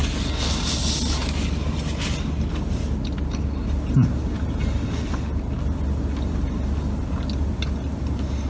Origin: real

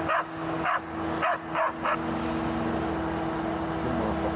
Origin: real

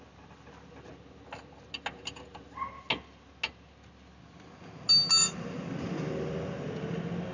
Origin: real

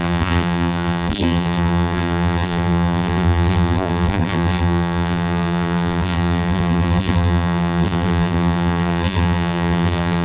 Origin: fake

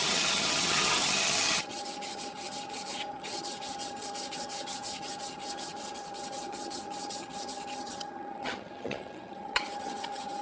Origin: fake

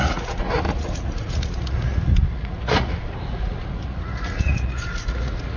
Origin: fake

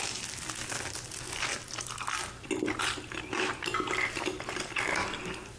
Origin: real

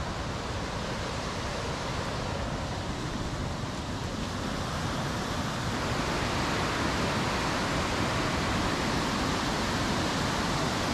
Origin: fake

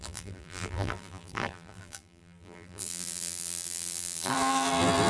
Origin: fake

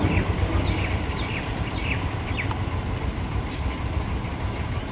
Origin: real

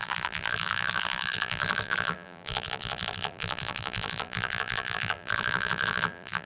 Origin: fake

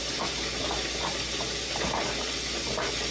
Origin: real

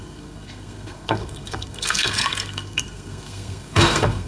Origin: fake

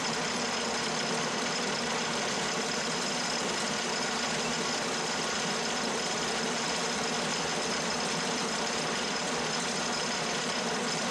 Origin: fake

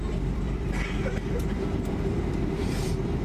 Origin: fake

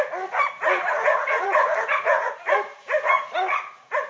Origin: fake